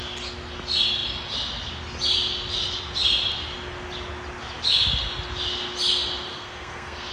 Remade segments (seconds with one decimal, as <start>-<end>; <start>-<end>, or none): 6.3-7.1